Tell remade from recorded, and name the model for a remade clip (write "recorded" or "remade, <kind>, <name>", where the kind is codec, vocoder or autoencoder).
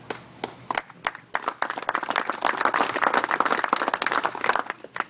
recorded